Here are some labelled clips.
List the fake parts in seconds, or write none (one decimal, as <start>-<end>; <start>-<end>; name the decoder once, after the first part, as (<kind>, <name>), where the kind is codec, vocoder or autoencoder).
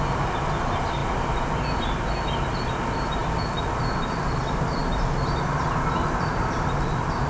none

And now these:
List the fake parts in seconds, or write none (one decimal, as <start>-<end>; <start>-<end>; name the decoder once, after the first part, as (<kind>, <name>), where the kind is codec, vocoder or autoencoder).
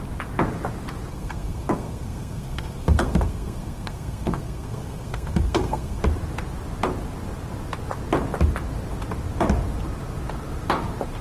1.1-6.0 (codec, SNAC)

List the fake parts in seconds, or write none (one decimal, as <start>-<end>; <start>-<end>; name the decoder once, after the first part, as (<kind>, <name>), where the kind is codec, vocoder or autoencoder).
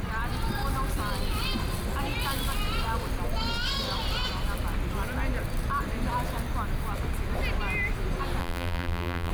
8.4-9.3 (vocoder, BigVGAN v2)